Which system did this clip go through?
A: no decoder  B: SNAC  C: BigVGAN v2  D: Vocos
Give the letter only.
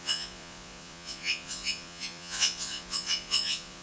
D